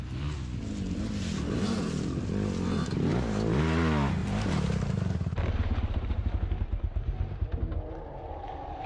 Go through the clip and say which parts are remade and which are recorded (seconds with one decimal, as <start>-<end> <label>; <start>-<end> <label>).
0.0-4.2 recorded; 4.2-7.6 remade; 7.6-8.9 recorded